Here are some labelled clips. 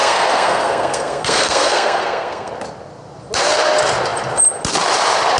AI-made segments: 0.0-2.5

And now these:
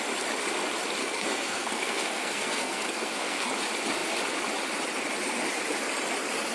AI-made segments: 1.0-3.5

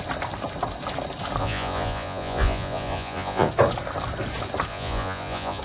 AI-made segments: 1.4-3.5; 4.7-5.6

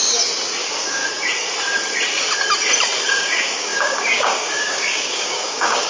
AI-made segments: 0.6-1.0; 3.1-5.9